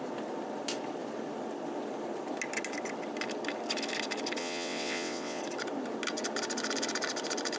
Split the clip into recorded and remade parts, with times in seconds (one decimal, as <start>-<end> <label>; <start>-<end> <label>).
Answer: 0.0-4.4 recorded; 4.4-5.4 remade; 5.4-7.6 recorded